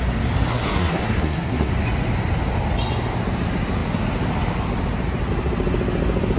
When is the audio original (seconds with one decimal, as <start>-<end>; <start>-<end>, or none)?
0.0-0.5; 1.7-6.4